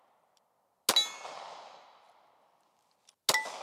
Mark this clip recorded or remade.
recorded